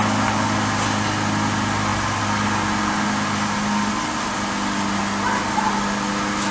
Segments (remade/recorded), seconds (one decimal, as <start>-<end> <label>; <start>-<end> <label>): 0.0-6.5 recorded